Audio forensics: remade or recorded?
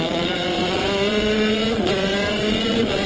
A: remade